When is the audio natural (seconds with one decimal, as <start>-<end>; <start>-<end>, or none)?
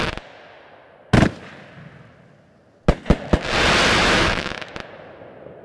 0.0-4.0; 4.7-5.6